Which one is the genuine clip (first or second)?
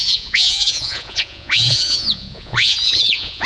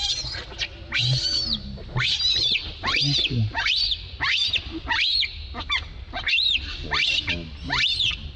second